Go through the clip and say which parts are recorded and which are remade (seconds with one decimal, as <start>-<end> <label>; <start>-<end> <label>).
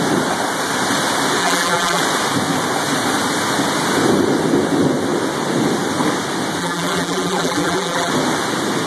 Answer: 0.0-1.4 recorded; 1.4-2.0 remade; 2.0-6.6 recorded; 6.6-8.1 remade; 8.1-8.9 recorded